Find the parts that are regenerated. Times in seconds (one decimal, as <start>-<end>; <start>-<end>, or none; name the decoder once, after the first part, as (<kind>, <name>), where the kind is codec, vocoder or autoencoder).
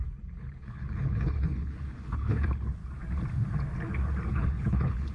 0.0-2.8 (codec, HILCodec); 4.3-5.1